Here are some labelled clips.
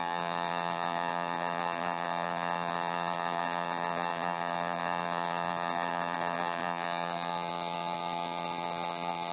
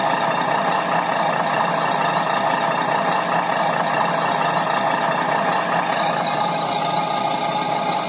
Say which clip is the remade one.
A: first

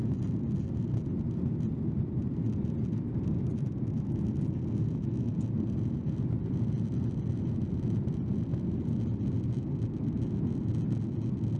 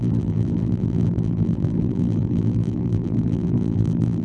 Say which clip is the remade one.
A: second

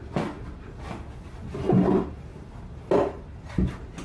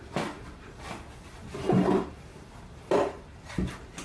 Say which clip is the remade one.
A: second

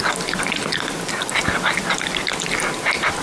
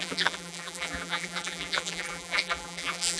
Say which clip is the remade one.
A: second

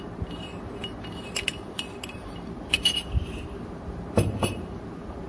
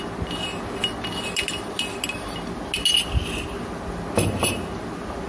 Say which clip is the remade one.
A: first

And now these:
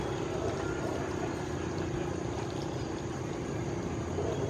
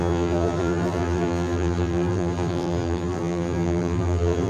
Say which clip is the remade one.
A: second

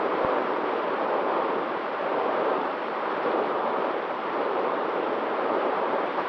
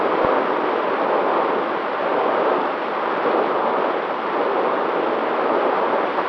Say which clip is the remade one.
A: first